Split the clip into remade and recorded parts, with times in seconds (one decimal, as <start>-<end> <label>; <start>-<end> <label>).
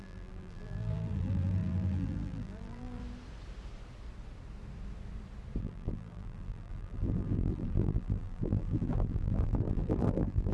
0.0-3.0 remade; 3.0-5.6 recorded; 5.6-10.5 remade